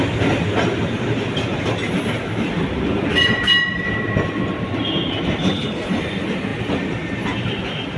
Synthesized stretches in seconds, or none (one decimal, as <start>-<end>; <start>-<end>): 5.4-6.0